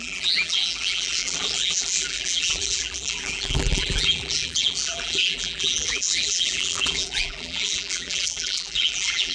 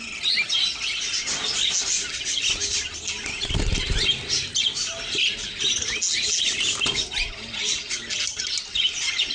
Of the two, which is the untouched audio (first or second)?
second